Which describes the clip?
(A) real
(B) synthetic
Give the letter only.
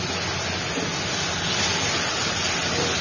A